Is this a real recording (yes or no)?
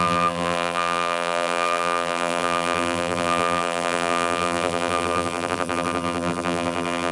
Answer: no